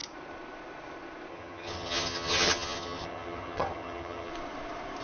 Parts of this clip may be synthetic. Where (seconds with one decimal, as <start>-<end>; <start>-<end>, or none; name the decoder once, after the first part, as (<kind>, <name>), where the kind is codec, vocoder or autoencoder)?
1.3-4.3 (vocoder, HiFi-GAN)